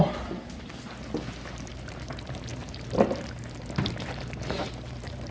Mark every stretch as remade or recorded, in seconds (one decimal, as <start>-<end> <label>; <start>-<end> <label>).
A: 0.0-1.7 recorded; 1.7-5.3 remade